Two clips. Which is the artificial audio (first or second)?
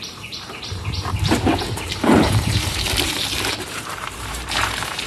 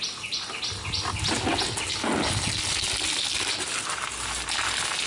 first